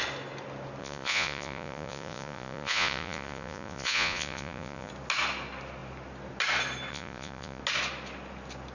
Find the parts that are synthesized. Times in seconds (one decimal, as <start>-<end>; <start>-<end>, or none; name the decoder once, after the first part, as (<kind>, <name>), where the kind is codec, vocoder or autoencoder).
0.8-4.9 (vocoder, Vocos); 6.9-7.6